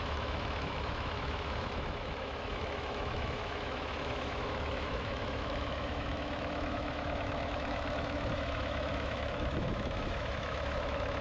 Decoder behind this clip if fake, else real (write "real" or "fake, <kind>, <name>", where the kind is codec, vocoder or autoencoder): fake, autoencoder, DAC-VAE